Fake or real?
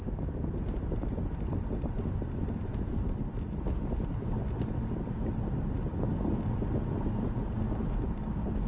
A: real